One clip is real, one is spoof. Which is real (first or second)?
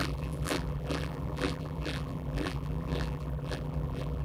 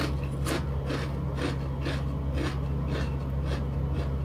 second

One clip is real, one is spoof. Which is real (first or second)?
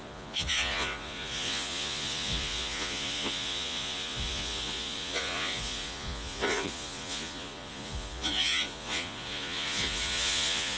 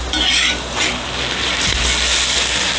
second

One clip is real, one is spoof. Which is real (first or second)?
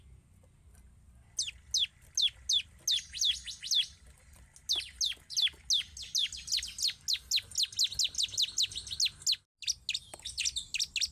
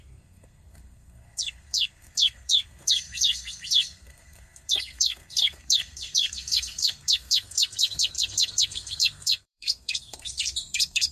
first